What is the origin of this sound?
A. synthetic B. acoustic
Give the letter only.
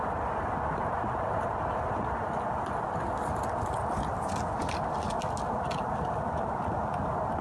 B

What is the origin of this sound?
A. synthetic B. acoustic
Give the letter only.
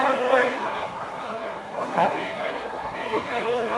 A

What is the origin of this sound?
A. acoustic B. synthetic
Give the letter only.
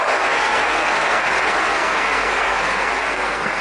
B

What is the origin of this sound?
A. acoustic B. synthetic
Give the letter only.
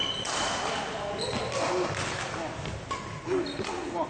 A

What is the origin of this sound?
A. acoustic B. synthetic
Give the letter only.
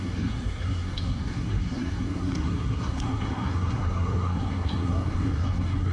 B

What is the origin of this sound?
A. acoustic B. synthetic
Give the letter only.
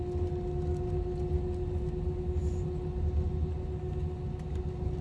A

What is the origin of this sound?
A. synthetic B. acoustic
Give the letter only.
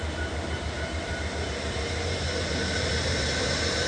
A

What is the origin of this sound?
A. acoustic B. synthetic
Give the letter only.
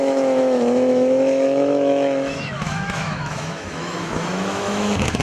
B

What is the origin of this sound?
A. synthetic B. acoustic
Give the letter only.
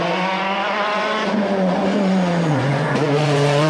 A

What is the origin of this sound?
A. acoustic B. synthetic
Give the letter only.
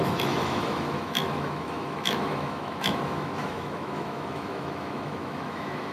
B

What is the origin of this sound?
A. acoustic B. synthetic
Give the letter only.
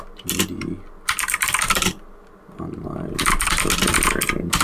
A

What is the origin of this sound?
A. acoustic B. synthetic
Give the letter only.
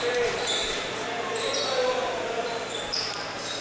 B